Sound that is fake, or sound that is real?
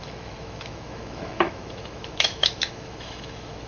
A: fake